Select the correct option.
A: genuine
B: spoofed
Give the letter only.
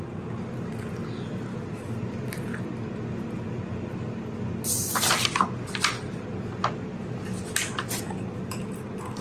A